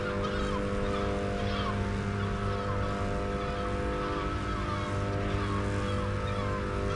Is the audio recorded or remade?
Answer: recorded